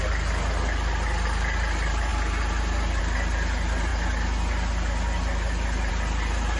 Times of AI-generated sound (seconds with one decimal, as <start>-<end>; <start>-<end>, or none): none

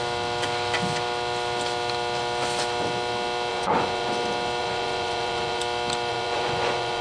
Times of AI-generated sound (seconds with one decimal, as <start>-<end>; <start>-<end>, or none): 3.5-4.1; 4.6-5.6; 6.1-7.0